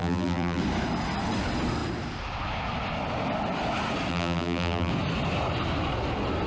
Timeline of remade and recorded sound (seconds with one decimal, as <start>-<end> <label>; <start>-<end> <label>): 0.0-0.6 remade; 0.6-4.1 recorded; 4.1-4.9 remade; 4.9-6.5 recorded